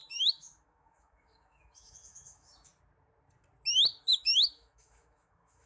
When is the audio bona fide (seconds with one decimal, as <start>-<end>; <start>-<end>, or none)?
2.7-4.0